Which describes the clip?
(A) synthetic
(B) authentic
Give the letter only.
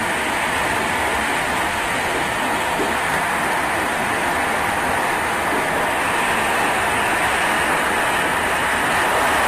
B